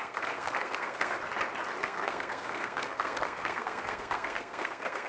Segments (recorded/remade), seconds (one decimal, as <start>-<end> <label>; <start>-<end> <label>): 0.0-1.2 remade; 1.2-1.8 recorded; 1.8-5.1 remade